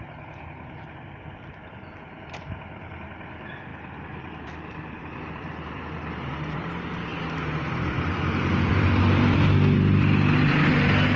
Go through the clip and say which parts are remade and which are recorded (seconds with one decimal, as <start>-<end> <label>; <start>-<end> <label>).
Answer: 0.0-11.2 remade